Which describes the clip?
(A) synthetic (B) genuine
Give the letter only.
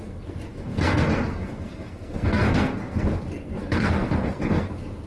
A